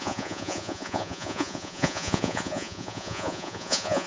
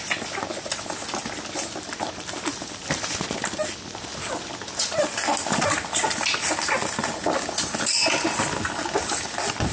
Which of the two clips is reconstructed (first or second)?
first